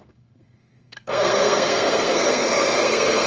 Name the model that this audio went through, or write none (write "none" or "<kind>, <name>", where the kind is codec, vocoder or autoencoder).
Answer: codec, SNAC